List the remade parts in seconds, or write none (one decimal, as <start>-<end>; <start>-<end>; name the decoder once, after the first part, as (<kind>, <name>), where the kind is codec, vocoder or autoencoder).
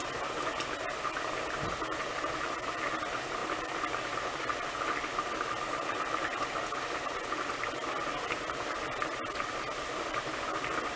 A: none